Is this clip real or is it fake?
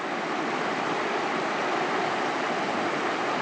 real